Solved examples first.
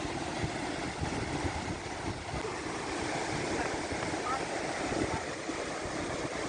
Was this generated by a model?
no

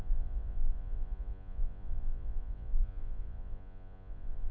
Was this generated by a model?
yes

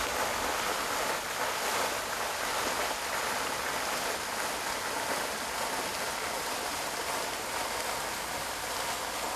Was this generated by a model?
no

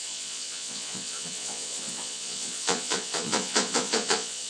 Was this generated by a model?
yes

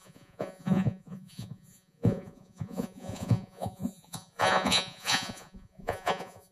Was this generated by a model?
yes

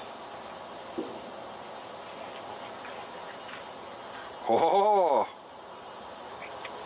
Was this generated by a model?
no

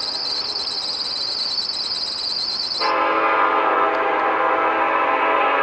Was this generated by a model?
no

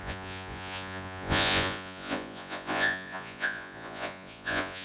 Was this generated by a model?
yes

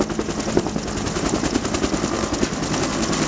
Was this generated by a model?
no